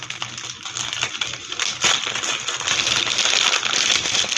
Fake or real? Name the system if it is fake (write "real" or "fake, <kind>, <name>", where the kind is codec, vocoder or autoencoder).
real